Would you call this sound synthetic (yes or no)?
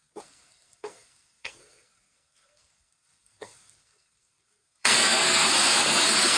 yes